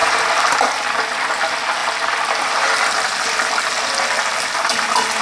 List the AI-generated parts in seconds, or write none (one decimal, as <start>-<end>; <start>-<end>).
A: 1.8-3.6